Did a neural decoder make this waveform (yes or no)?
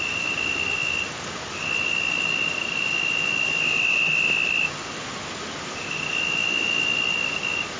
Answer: no